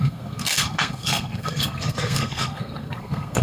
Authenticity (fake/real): fake